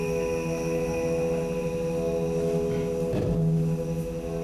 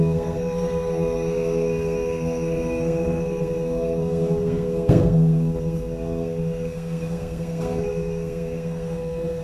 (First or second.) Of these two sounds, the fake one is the second